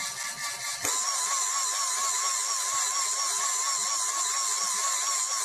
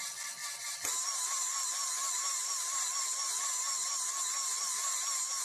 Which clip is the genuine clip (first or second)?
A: first